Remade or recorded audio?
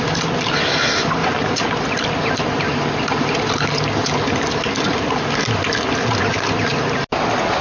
recorded